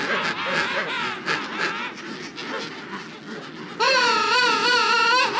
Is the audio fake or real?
real